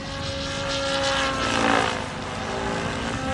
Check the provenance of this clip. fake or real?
real